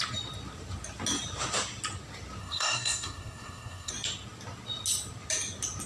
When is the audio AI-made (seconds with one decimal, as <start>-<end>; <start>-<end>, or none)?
2.4-3.9